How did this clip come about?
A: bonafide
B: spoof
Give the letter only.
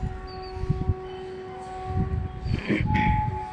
A